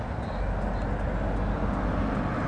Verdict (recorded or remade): recorded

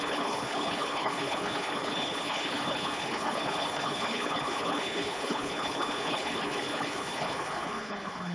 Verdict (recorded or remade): remade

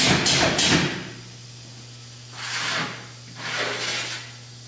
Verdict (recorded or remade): recorded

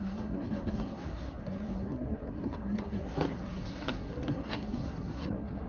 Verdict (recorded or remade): remade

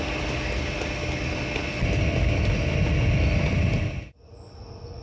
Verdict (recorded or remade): recorded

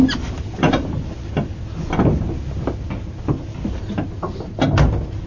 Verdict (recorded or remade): recorded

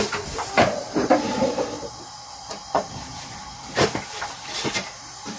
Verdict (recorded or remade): remade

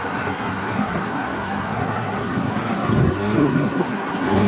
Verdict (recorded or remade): remade